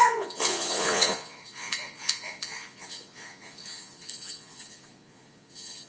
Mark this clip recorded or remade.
remade